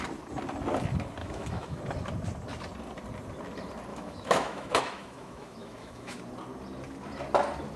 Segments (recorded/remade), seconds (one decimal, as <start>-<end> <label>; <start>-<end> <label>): 0.0-1.2 recorded; 1.2-1.8 remade; 1.8-3.9 recorded; 3.9-6.2 remade; 6.2-7.8 recorded